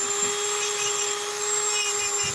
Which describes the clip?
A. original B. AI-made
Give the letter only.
A